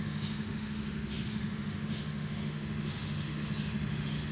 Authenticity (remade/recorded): remade